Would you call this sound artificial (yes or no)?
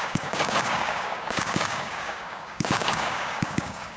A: yes